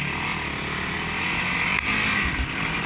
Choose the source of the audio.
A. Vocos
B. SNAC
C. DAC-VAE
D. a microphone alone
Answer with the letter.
D